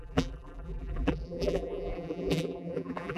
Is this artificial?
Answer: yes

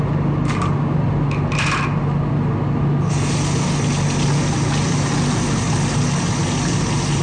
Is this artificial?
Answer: no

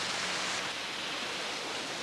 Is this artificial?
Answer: no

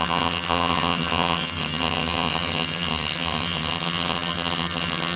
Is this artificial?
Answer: yes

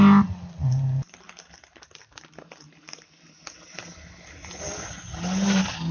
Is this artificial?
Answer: no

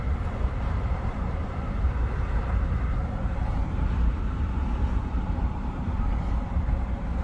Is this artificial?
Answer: yes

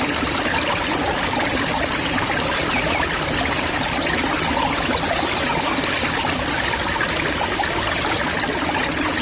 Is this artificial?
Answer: no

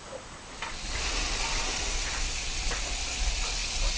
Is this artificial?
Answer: no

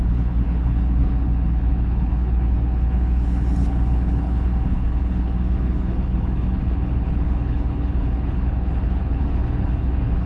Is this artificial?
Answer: yes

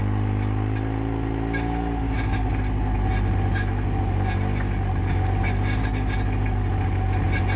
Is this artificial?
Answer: no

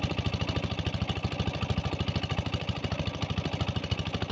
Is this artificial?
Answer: no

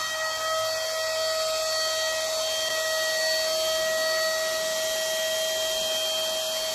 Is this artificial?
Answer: no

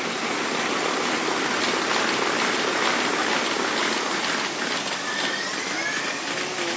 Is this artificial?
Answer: no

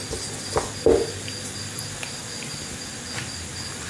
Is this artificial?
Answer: no